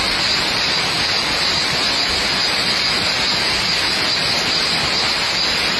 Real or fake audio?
real